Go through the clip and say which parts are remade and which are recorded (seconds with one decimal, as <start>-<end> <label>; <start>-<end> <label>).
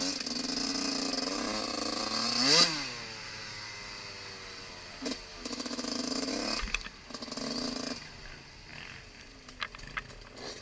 0.0-5.3 recorded; 5.3-6.3 remade; 6.3-10.6 recorded